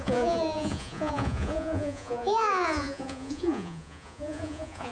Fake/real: fake